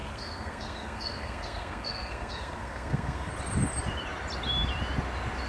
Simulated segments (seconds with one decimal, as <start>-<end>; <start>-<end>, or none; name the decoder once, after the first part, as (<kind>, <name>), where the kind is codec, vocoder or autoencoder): 0.0-3.3 (codec, SNAC)